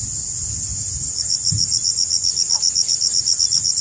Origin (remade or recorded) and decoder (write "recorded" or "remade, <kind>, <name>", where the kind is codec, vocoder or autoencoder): recorded